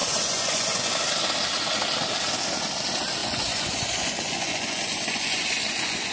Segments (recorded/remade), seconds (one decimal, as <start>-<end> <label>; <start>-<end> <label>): 0.0-0.9 remade; 0.9-3.2 recorded; 3.2-6.1 remade